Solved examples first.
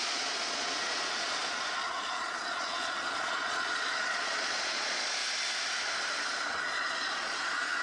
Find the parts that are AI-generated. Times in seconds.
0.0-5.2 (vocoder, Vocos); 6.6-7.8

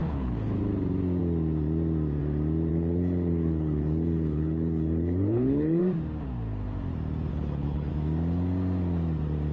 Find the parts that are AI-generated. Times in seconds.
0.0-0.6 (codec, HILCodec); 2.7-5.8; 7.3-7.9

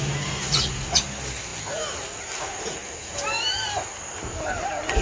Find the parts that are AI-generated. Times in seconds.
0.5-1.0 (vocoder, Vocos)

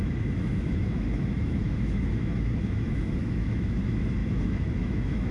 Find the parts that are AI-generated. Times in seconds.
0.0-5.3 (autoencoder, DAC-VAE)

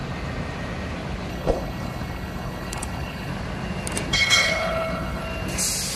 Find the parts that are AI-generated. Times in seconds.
1.3-3.3 (codec, HILCodec); 4.1-5.2